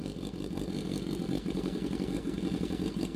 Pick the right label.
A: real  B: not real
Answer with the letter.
B